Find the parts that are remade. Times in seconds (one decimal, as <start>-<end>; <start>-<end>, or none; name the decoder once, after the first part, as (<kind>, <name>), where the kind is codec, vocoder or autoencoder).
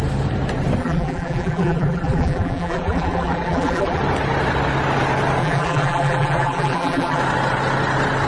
0.8-4.0 (vocoder, BigVGAN v2); 5.4-7.2